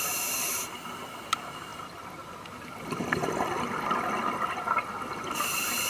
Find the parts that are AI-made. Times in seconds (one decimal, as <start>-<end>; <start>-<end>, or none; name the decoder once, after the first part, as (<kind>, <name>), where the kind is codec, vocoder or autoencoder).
none